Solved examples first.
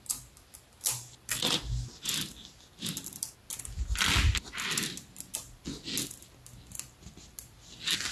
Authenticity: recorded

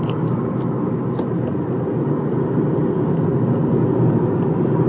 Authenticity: recorded